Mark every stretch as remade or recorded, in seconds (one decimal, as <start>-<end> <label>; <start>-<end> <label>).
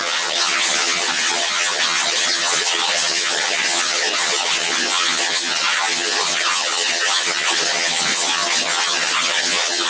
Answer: 0.0-9.9 remade